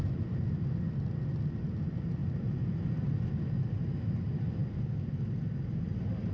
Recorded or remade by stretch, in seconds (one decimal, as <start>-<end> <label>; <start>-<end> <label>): 0.0-6.3 recorded